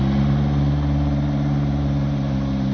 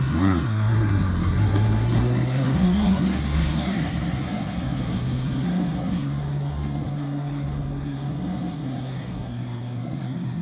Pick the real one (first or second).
first